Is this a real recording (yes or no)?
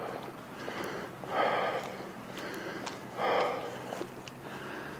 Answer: yes